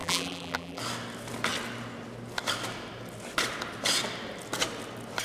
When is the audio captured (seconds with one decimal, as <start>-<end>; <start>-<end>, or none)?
0.8-5.2